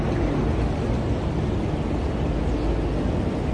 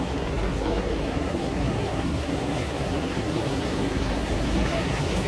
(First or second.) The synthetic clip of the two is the second